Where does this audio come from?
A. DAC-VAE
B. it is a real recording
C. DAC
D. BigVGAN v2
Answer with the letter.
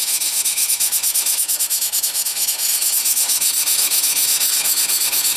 A